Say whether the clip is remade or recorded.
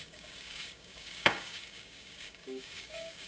remade